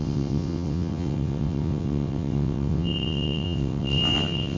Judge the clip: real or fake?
fake